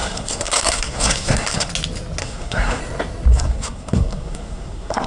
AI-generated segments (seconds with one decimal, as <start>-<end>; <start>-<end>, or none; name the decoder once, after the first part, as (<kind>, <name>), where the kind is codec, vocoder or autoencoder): 0.0-1.7 (codec, SNAC); 2.2-2.8; 3.3-5.1